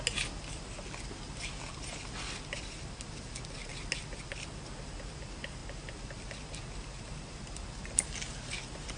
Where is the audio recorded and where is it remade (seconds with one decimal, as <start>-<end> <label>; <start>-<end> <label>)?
0.0-9.0 recorded